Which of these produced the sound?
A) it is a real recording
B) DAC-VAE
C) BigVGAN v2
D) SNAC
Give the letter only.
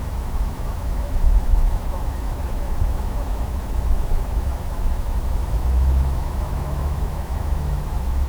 B